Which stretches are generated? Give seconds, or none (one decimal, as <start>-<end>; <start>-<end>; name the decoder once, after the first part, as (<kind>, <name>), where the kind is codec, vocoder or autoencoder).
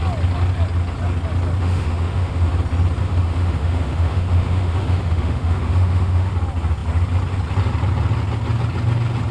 1.6-2.5 (autoencoder, DAC-VAE); 3.0-6.3